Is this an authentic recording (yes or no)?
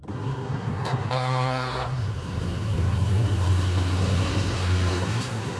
no